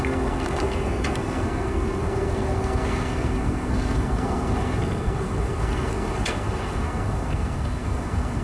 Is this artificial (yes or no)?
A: yes